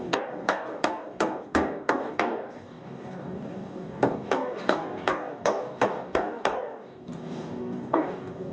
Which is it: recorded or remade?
remade